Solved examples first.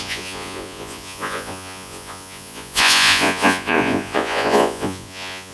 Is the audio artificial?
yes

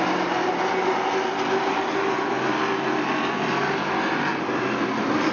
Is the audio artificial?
no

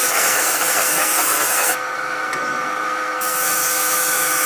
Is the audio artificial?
yes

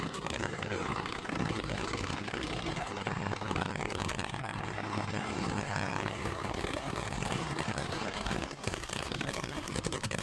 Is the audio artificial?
yes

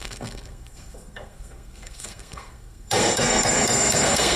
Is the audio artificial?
yes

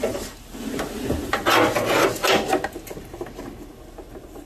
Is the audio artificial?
no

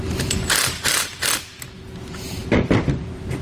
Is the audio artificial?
no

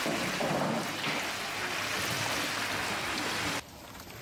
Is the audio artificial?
no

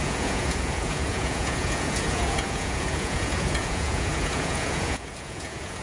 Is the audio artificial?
yes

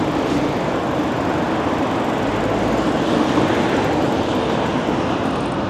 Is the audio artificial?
no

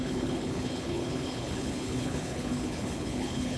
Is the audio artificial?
yes